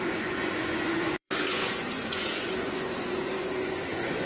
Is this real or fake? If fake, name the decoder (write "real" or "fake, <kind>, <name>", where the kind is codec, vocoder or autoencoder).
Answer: fake, vocoder, Vocos